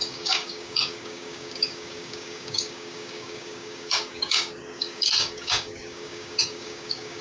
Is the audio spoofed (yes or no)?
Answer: yes